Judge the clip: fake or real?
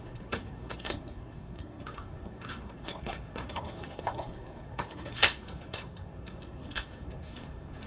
fake